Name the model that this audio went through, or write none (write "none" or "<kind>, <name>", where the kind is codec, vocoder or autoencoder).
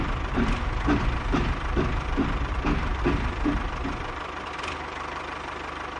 vocoder, BigVGAN v2